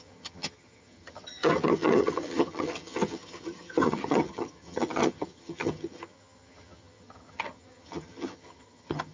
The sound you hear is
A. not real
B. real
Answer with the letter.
A